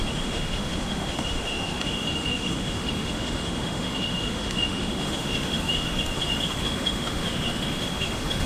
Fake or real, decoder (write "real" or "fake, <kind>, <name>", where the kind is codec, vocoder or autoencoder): fake, autoencoder, DAC-VAE